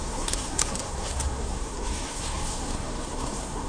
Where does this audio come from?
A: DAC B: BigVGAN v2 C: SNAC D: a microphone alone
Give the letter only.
C